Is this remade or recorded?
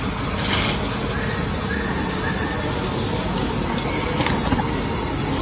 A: recorded